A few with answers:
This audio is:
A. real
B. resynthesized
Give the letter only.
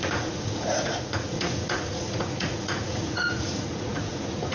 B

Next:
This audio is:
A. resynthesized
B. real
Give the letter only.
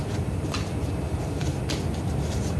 A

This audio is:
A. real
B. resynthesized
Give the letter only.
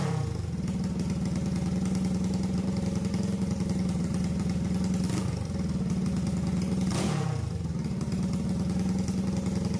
A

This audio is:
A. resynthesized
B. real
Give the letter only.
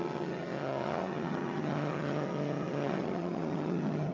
A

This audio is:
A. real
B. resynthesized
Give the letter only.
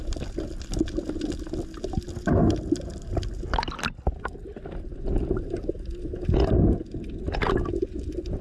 A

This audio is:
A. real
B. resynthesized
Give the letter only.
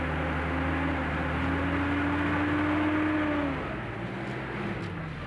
A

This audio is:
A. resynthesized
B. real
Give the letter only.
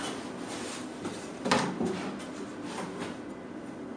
B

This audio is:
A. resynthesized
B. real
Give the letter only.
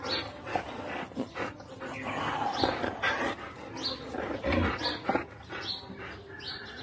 B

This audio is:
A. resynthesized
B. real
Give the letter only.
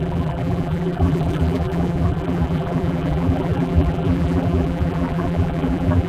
A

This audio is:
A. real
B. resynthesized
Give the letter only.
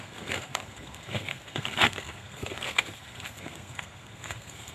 B